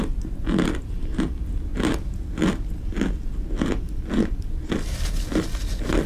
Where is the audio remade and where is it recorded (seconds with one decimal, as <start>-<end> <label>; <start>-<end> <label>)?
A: 0.0-6.1 recorded